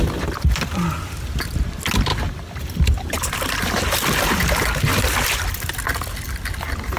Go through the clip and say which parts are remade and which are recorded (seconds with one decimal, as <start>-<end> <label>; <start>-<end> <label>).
0.0-2.1 recorded; 2.1-4.2 remade; 4.2-4.9 recorded; 4.9-5.5 remade; 5.5-7.0 recorded